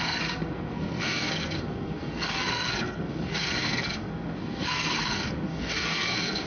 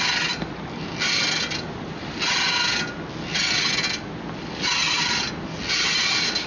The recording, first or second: second